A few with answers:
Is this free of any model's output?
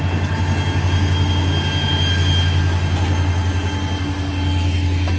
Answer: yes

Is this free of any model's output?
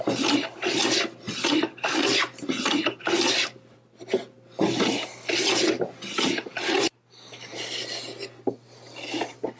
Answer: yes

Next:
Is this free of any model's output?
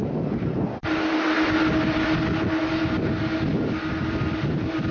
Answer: yes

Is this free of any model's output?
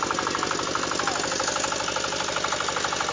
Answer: yes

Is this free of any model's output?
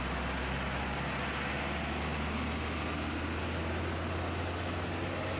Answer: yes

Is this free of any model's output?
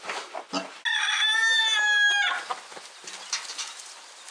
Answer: yes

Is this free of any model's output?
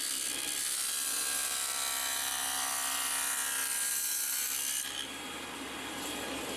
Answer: no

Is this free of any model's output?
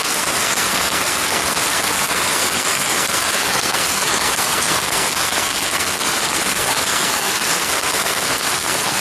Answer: no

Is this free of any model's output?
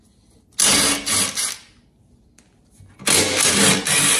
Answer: yes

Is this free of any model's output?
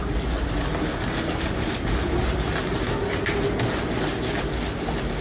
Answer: yes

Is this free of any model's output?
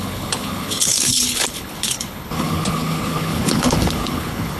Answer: no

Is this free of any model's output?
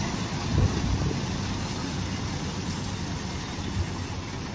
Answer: yes